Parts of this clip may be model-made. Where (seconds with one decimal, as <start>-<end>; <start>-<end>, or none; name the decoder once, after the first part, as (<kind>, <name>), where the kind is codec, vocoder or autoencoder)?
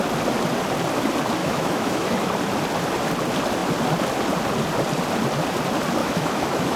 1.4-2.3 (autoencoder, DAC-VAE); 6.0-6.8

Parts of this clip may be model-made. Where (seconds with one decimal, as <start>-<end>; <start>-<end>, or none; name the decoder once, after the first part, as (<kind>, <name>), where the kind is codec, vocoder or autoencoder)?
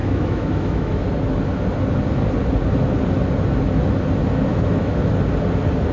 0.0-1.0 (autoencoder, DAC-VAE); 4.5-5.1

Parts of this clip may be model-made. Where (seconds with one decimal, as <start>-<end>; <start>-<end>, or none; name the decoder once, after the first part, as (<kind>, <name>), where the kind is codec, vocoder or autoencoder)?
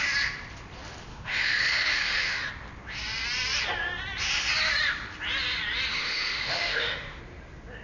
1.1-2.5 (autoencoder, DAC-VAE); 5.9-7.2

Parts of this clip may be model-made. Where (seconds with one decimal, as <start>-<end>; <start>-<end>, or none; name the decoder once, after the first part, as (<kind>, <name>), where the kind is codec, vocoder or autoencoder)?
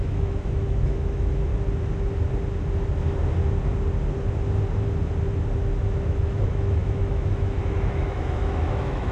0.0-1.5 (autoencoder, DAC-VAE); 5.8-9.1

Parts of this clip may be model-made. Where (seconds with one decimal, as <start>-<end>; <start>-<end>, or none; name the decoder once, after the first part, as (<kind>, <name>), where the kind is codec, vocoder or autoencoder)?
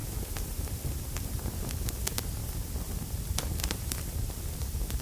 none